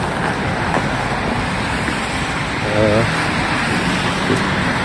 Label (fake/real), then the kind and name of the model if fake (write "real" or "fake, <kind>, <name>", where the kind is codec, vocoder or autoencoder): real